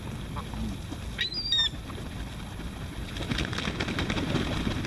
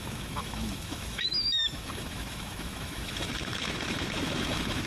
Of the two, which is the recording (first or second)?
first